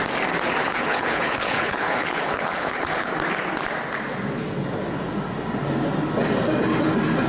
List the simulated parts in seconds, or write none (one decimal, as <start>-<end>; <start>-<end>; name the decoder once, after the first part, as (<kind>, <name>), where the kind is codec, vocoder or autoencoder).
0.6-3.1 (codec, HILCodec)